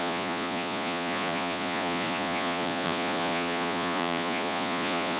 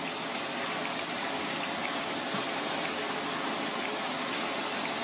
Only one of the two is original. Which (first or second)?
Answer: second